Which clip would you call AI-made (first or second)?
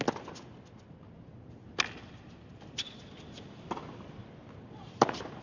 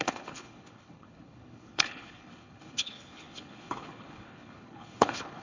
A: second